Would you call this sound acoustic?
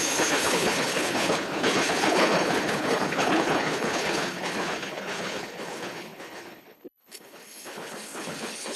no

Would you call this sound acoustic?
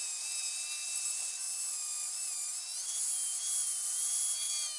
yes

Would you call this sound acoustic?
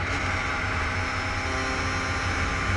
yes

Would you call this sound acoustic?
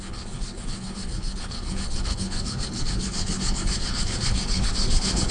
no